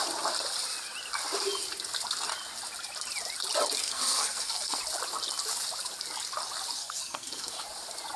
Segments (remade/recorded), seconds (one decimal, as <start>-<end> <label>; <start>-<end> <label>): 0.0-3.8 recorded; 3.8-4.8 remade; 4.8-6.8 recorded; 6.8-7.5 remade; 7.5-8.2 recorded